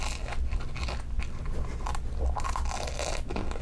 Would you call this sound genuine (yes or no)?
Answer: yes